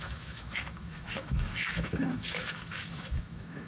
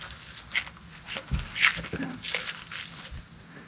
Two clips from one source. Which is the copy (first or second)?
first